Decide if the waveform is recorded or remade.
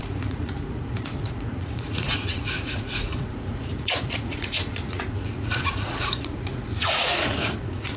remade